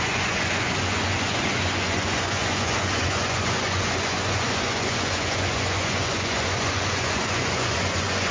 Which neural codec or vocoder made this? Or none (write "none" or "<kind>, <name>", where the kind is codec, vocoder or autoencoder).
vocoder, Vocos